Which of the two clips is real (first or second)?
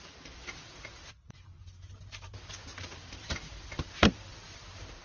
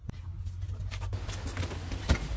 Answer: second